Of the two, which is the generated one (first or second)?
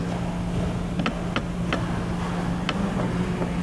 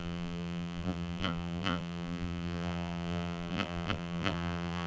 second